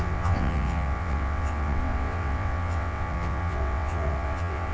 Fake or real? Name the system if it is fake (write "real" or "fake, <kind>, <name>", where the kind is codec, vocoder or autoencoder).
fake, vocoder, WaveNeXt